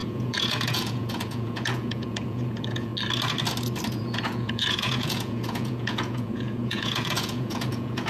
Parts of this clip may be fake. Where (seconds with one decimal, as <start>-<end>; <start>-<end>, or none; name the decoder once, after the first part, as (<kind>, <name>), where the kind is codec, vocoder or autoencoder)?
0.0-2.9 (vocoder, Vocos); 3.9-8.1